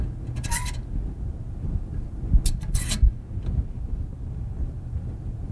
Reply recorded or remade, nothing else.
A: recorded